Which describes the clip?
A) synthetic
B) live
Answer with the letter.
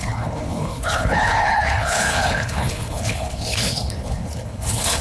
A